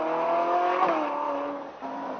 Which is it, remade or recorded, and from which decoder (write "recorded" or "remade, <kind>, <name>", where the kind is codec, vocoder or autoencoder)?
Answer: recorded